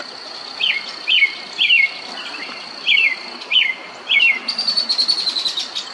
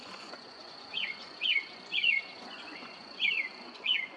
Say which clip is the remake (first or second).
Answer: second